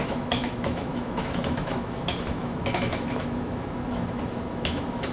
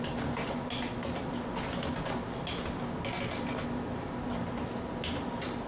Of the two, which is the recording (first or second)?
second